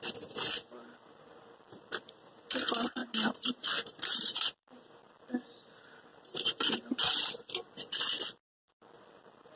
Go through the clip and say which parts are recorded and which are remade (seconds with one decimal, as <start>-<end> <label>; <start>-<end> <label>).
0.0-3.0 recorded; 3.0-5.1 remade; 5.1-6.1 recorded; 6.1-7.3 remade; 7.3-9.6 recorded